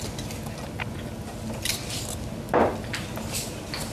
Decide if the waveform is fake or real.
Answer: real